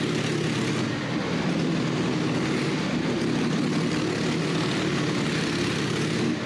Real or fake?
real